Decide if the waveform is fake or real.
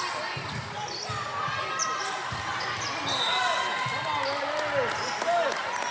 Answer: real